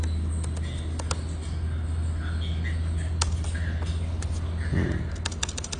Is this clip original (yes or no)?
yes